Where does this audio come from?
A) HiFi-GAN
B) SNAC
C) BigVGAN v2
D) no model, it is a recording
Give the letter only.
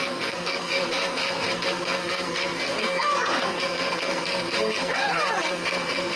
B